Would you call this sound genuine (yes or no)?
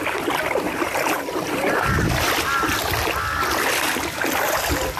yes